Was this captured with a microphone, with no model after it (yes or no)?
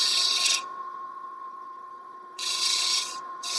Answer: no